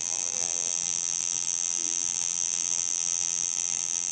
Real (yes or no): no